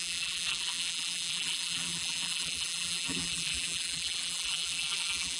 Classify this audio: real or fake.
fake